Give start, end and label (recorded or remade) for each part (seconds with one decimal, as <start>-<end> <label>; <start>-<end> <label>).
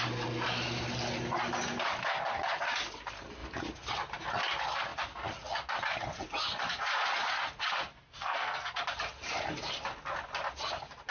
0.0-7.9 recorded; 7.9-8.8 remade; 8.8-11.1 recorded